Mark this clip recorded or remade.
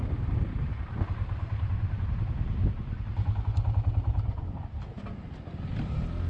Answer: recorded